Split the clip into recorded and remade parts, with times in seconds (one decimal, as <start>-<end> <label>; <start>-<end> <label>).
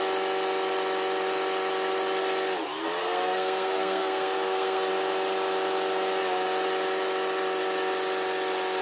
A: 0.0-3.0 recorded; 3.0-4.9 remade; 4.9-8.8 recorded